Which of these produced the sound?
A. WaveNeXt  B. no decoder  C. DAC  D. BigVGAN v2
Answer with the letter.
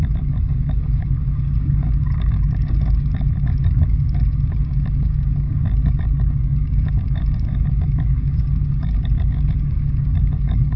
C